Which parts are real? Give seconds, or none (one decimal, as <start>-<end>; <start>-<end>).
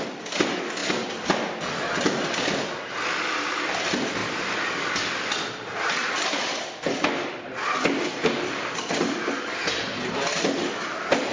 0.0-11.3